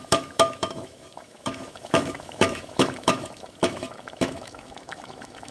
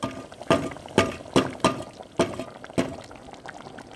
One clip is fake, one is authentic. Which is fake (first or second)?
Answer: first